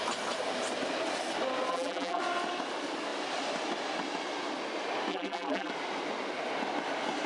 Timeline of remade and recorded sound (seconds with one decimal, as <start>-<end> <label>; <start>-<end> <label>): 0.0-1.7 recorded; 1.7-2.2 remade; 2.2-5.1 recorded; 5.1-5.7 remade; 5.7-7.3 recorded